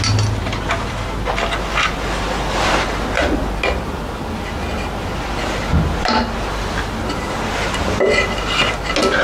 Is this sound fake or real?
real